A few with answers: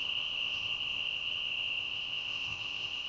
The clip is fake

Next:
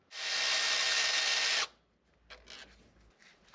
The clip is real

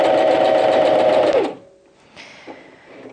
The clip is real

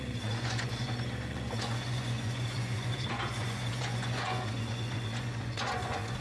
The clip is fake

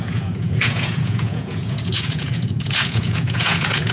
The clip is fake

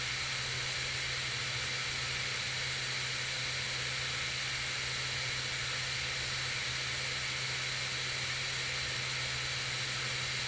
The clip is real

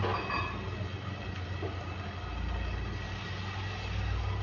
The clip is real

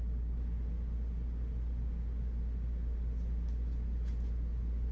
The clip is real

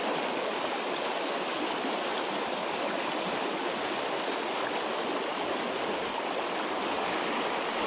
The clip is real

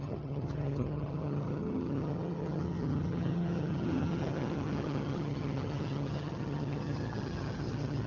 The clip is fake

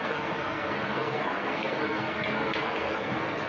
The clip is fake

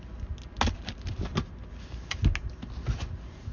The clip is real